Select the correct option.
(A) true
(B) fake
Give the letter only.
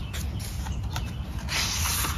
A